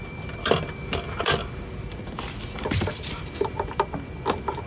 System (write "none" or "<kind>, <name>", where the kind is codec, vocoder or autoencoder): vocoder, BigVGAN v2